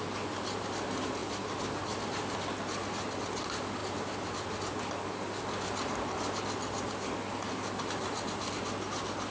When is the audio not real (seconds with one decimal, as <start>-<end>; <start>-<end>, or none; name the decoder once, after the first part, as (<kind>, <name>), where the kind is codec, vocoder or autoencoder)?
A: none